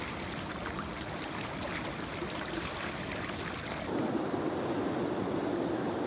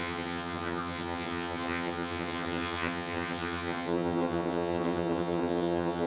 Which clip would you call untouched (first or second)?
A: first